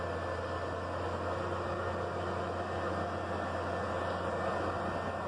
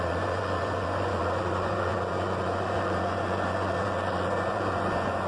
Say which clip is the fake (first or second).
second